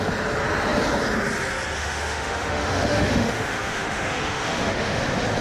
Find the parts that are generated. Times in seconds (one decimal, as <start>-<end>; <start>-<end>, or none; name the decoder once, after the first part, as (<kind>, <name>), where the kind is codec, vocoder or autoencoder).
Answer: 1.8-5.0 (autoencoder, DAC-VAE)

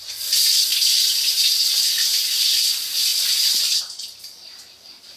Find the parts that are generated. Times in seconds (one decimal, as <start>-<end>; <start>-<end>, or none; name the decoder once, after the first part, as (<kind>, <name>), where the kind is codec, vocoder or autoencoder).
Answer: none